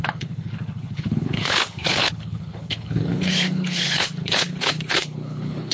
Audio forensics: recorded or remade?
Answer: remade